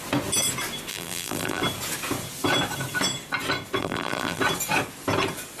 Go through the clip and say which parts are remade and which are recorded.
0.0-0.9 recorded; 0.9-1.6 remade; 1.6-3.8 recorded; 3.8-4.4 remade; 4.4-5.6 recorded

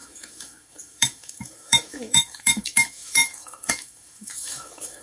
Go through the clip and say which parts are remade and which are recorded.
0.0-5.0 remade

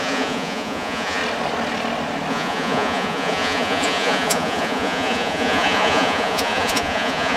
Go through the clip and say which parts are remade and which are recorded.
0.0-1.2 remade; 1.2-2.3 recorded; 2.3-7.4 remade

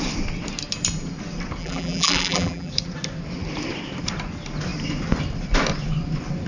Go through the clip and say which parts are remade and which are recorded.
0.0-1.6 recorded; 1.6-2.7 remade; 2.7-6.5 recorded

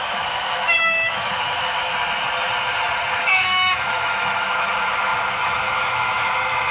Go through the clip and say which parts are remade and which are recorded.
0.0-1.9 remade; 1.9-3.1 recorded; 3.1-6.7 remade